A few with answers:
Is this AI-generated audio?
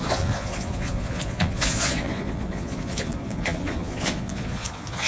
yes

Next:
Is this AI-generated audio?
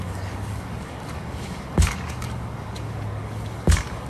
yes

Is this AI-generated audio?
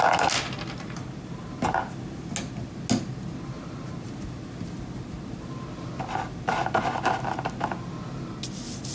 no